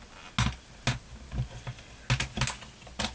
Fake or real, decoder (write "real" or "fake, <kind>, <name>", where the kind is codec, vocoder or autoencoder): real